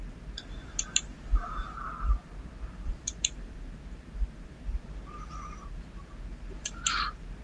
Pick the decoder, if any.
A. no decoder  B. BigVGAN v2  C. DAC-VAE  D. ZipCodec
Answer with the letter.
B